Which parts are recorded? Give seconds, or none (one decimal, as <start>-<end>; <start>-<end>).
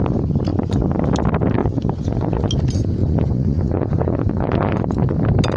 0.0-0.5; 1.1-1.6; 2.5-3.0; 5.1-5.6